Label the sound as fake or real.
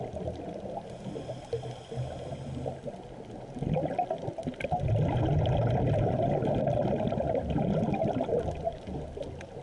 real